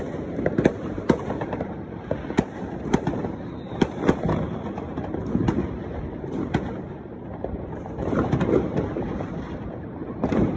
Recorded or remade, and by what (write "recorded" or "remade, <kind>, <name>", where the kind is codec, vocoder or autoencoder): remade, vocoder, BigVGAN v2